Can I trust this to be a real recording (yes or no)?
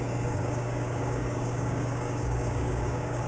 no